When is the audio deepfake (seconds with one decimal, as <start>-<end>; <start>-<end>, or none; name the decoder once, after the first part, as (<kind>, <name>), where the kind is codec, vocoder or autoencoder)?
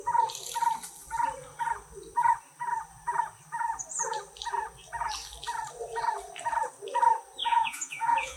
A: 7.4-8.4 (vocoder, Vocos)